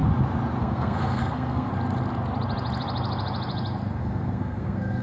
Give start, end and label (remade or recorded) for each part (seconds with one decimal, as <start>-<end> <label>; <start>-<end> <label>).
0.0-0.6 recorded; 0.6-1.7 remade; 1.7-4.0 recorded; 4.0-5.0 remade